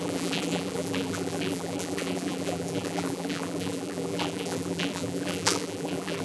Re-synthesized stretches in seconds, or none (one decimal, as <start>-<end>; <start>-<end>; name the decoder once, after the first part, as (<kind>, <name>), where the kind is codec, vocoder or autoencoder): 0.0-6.2 (vocoder, BigVGAN v2)